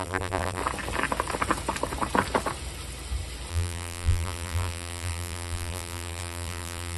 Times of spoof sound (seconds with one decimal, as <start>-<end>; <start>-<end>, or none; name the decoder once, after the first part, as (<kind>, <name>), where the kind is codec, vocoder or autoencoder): 0.0-0.6 (vocoder, BigVGAN v2); 3.5-7.0